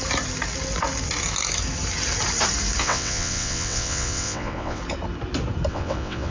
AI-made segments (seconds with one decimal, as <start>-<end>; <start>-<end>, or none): 2.8-4.8; 5.7-6.3

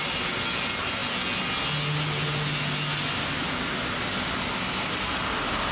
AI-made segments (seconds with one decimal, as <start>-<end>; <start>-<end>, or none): none

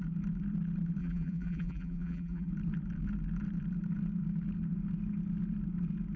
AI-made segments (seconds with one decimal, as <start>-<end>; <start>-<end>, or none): 1.0-2.5

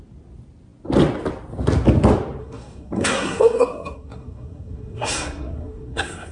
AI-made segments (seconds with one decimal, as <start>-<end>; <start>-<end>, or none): 2.4-6.3